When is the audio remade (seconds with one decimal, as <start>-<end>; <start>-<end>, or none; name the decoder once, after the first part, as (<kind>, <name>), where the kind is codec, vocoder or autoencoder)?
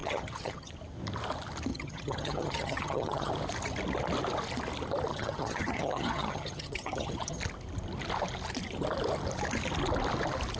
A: 0.0-0.7 (vocoder, HiFi-GAN); 1.7-3.3; 5.1-7.4